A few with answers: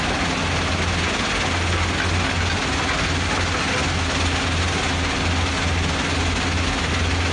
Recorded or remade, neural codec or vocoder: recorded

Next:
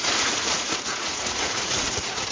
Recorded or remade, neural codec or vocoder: remade, vocoder, Vocos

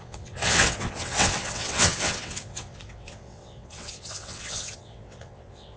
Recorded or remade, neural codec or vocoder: remade, vocoder, WaveNeXt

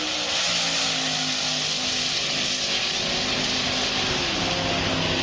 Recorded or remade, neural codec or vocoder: recorded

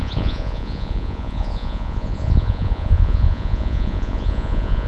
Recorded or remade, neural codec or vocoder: remade, vocoder, Vocos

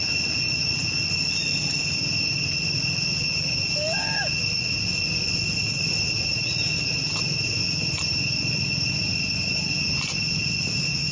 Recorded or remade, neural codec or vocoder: recorded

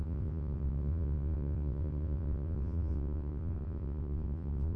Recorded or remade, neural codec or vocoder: remade, vocoder, WaveNeXt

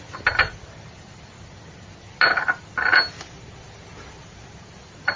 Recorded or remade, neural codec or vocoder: recorded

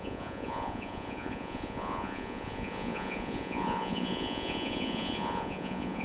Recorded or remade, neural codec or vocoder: remade, vocoder, Vocos